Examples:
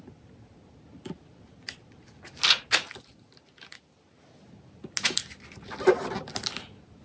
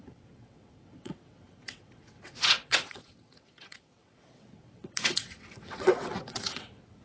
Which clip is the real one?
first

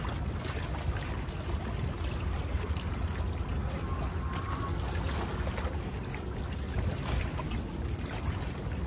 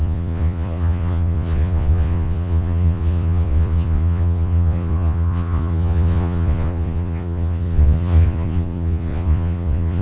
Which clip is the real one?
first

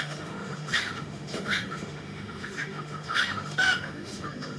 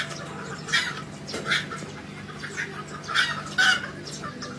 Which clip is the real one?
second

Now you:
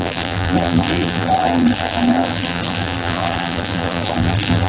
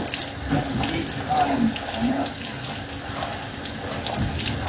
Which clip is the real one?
second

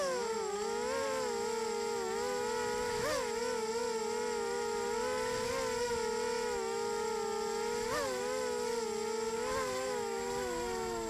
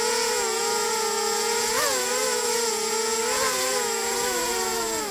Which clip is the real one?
first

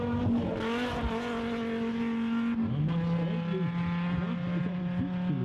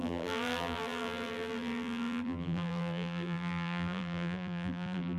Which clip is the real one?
first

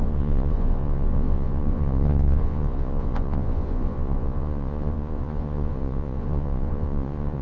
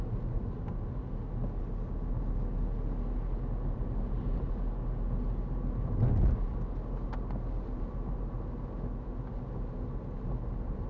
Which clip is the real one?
second